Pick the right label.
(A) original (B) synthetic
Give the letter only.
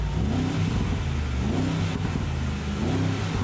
A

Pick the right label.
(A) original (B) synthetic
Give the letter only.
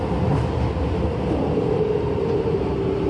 A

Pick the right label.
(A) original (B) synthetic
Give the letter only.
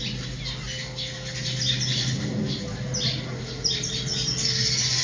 A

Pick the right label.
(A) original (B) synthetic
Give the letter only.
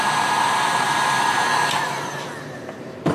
B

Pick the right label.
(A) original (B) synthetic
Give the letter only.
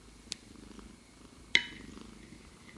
A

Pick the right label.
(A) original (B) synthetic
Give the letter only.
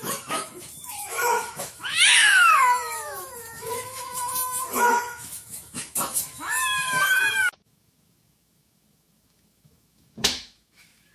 B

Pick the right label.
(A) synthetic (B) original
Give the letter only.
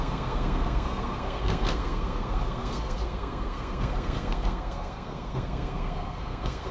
A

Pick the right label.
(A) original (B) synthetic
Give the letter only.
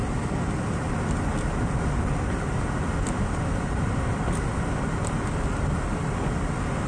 A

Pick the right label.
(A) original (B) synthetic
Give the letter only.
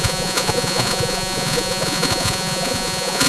B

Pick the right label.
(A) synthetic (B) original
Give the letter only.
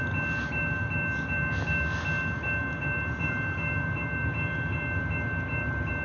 B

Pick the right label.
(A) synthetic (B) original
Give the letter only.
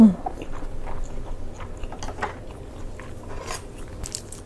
B